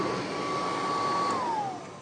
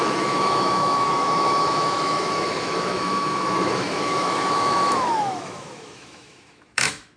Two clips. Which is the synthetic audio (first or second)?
second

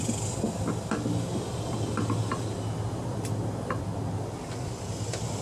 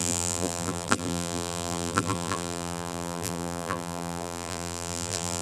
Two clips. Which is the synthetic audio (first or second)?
second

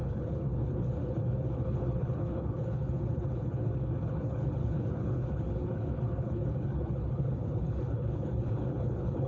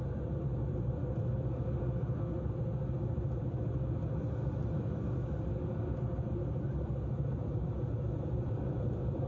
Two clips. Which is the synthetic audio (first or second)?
first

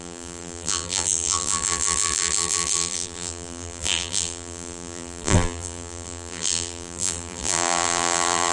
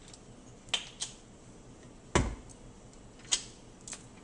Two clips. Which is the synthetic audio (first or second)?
first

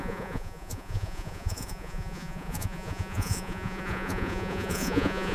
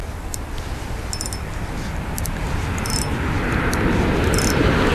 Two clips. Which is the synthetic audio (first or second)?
first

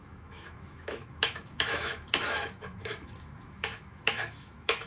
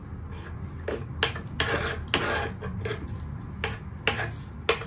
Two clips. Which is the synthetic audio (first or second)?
first